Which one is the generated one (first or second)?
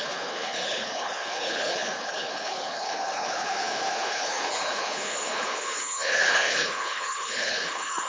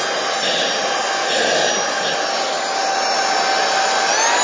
first